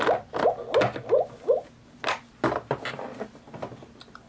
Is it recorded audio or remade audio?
recorded